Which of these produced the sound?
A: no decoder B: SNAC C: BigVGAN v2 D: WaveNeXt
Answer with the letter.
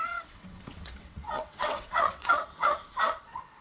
D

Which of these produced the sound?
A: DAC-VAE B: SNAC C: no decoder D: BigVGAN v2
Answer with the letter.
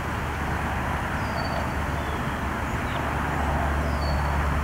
C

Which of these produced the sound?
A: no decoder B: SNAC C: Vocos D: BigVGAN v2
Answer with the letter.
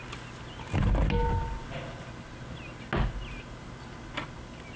A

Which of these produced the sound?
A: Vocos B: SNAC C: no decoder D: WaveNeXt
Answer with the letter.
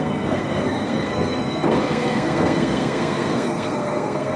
B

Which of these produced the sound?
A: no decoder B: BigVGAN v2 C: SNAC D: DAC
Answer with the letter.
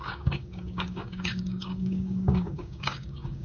D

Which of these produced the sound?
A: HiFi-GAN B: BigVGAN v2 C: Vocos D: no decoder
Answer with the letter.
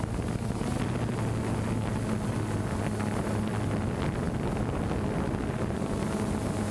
D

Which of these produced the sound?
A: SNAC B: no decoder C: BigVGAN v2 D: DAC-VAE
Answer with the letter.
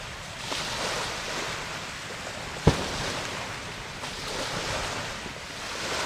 C